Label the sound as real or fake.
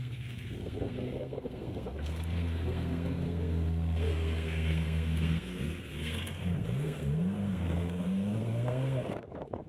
fake